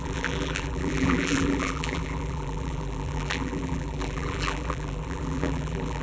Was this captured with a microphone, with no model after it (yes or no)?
no